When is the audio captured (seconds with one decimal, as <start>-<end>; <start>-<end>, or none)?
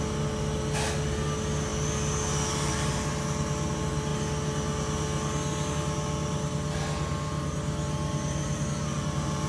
0.0-9.5